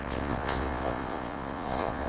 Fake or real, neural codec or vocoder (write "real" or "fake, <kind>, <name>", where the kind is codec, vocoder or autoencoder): fake, vocoder, Vocos